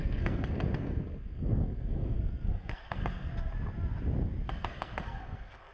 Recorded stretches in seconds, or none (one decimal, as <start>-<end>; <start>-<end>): 3.3-4.5